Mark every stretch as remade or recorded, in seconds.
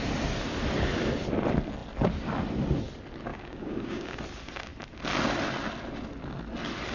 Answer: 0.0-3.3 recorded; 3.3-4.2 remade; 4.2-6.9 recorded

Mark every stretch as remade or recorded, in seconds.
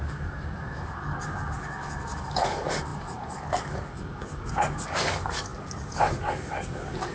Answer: 0.0-7.1 remade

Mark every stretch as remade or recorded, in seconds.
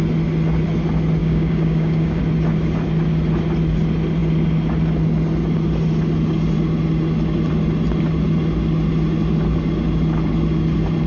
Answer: 0.0-1.2 recorded; 1.2-2.2 remade; 2.2-11.1 recorded